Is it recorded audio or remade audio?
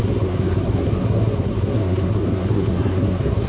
remade